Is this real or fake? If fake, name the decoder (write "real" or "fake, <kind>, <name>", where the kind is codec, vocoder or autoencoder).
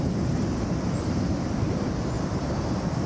fake, vocoder, BigVGAN v2